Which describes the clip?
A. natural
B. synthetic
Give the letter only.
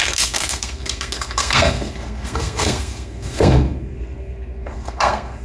B